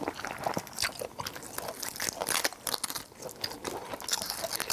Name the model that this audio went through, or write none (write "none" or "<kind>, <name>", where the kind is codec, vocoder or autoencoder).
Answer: none